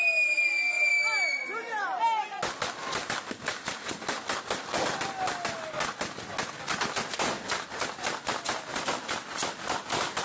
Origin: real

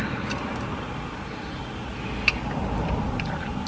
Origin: real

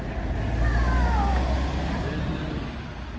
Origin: real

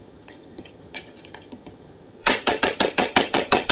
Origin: fake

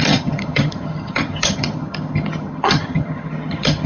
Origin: fake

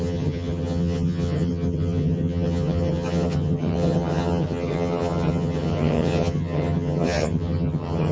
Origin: fake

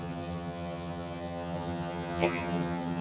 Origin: fake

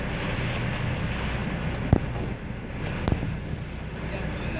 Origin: real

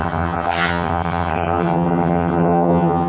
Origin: fake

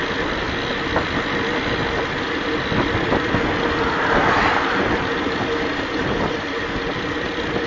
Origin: real